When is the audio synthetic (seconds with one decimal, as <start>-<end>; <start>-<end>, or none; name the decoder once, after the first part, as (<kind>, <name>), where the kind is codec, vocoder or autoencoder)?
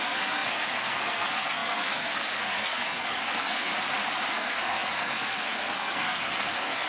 0.0-3.7 (codec, SNAC); 4.3-6.9